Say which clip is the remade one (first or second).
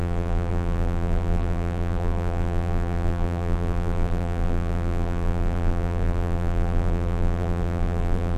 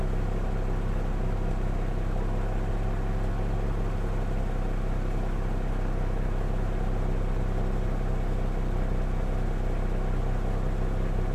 first